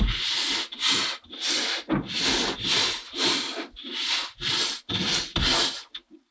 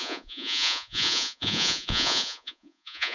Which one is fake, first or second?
second